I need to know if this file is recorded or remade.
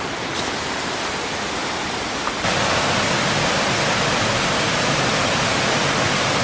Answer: recorded